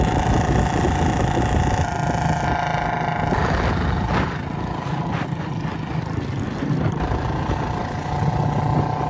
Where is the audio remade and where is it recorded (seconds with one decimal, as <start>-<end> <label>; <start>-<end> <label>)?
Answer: 0.0-9.1 recorded